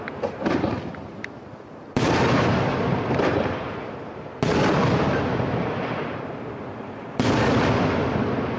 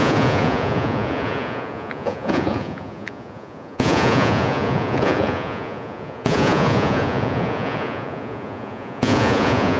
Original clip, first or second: first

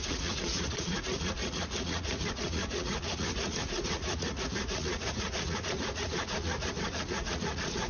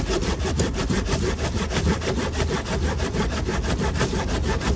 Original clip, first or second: second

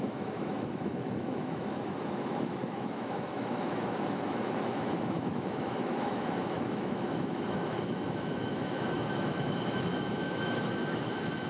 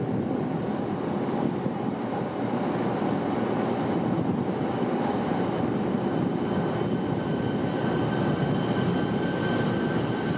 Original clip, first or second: second